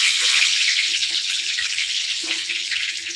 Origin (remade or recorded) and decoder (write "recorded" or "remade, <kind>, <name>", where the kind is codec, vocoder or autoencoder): remade, codec, HILCodec